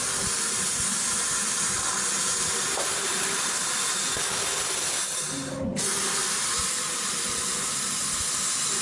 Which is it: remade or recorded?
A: recorded